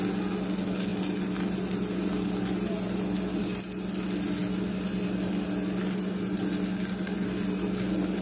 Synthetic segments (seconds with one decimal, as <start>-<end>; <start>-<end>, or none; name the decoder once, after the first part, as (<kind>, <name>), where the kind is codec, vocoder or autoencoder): none

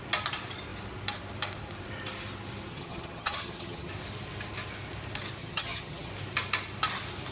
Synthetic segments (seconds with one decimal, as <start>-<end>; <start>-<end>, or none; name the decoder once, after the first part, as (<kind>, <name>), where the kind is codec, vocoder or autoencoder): 2.7-3.9 (vocoder, HiFi-GAN); 5.4-6.1

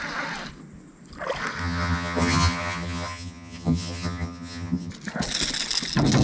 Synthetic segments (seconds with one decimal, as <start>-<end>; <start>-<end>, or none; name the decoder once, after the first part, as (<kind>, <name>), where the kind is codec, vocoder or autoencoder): 1.6-4.9 (vocoder, HiFi-GAN)

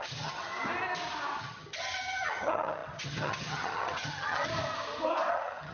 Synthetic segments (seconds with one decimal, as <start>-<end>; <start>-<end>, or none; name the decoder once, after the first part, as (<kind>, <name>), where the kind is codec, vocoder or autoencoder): 0.0-0.5 (vocoder, HiFi-GAN); 1.4-4.5; 5.3-5.7

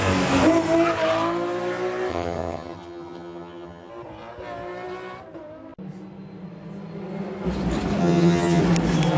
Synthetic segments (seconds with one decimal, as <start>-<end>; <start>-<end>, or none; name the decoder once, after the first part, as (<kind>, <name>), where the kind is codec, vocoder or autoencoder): 2.1-3.9 (vocoder, HiFi-GAN); 8.0-8.6